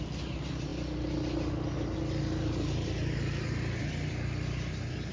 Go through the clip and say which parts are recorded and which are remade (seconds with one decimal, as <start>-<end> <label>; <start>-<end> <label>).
0.0-5.1 recorded